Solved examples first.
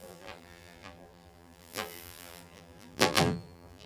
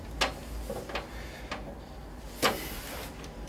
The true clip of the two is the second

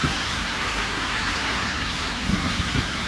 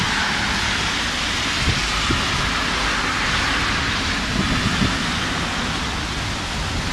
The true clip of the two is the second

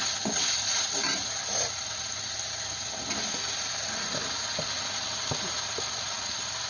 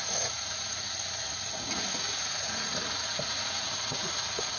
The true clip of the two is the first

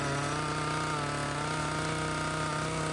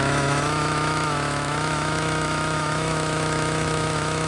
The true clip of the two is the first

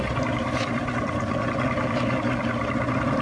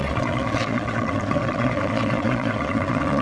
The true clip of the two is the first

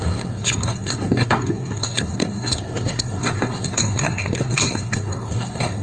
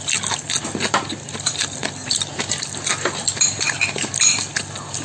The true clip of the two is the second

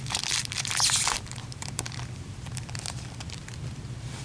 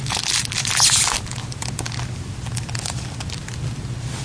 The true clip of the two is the second